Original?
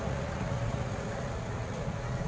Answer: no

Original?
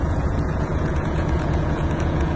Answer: no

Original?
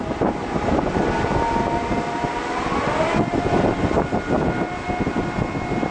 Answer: yes